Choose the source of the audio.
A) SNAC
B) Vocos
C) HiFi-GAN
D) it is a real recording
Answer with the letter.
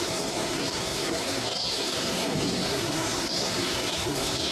A